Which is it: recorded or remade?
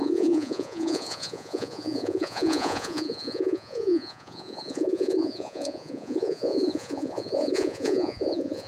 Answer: remade